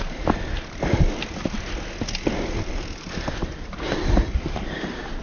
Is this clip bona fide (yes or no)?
yes